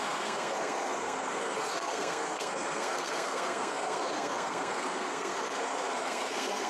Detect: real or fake fake